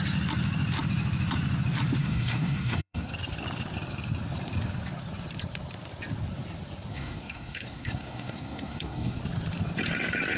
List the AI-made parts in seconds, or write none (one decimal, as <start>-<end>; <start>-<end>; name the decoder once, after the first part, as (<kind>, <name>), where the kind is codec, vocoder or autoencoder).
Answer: 2.0-3.1 (codec, SNAC); 6.9-9.2